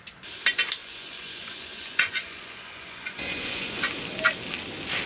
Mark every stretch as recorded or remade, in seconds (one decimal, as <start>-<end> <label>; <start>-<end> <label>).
0.0-0.8 recorded; 0.8-3.9 remade; 3.9-5.1 recorded